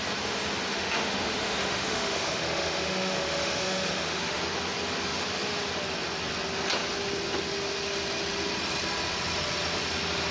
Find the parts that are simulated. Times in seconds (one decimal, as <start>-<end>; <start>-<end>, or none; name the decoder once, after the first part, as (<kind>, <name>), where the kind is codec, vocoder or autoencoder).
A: 0.7-4.4 (autoencoder, DAC-VAE)